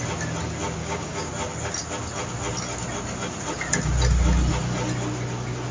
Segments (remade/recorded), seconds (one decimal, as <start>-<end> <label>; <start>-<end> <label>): 0.0-0.8 recorded; 0.8-1.3 remade; 1.3-5.7 recorded